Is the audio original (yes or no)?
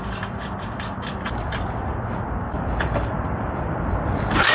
no